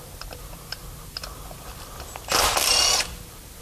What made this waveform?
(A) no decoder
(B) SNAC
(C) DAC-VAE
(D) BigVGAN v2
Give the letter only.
A